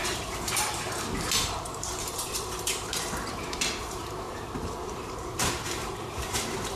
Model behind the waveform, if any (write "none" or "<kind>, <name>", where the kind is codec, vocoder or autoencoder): vocoder, BigVGAN v2